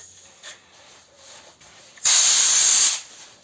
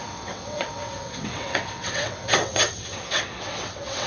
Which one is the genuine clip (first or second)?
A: first